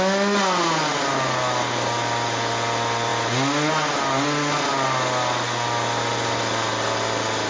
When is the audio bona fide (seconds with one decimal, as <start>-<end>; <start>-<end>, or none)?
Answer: 0.0-7.5